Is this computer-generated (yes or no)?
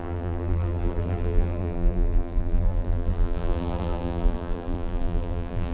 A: yes